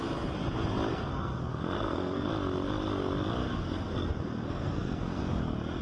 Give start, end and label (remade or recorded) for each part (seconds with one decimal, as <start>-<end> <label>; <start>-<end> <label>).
0.0-0.9 recorded; 0.9-2.3 remade; 2.3-3.4 recorded; 3.4-5.2 remade; 5.2-5.8 recorded